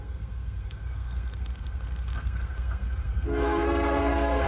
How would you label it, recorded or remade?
remade